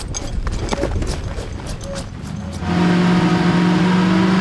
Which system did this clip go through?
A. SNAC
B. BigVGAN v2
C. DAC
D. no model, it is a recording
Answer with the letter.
D